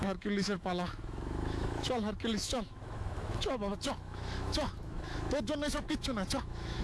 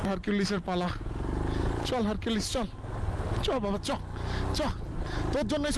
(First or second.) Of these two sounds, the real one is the second